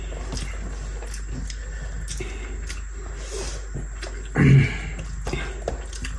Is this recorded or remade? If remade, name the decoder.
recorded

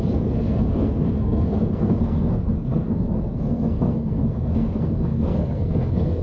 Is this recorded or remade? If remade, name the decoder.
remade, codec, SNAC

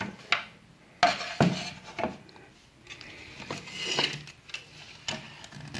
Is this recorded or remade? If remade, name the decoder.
recorded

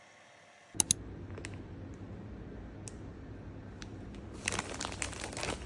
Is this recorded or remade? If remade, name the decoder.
recorded